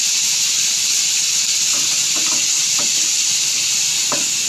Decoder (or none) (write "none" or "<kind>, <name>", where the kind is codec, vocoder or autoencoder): none